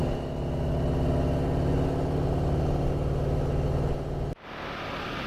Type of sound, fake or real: real